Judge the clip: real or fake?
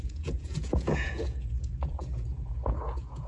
fake